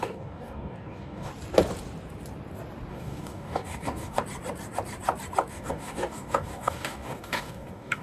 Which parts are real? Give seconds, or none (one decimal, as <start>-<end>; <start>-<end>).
1.3-2.9; 4.2-5.5